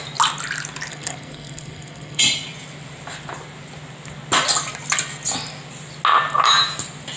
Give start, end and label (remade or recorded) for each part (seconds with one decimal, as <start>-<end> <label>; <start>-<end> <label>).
0.0-0.9 recorded; 0.9-2.2 remade; 2.2-7.2 recorded